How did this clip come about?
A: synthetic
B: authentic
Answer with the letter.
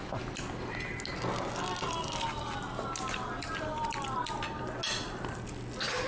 B